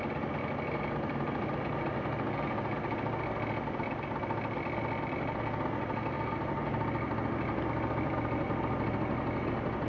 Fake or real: real